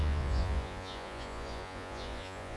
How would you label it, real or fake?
fake